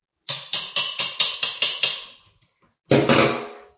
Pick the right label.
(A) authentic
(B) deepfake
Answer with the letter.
A